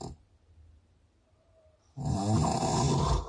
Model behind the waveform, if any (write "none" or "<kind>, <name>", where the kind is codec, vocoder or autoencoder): none